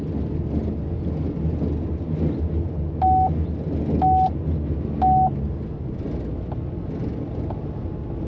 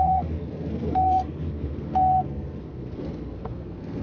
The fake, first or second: second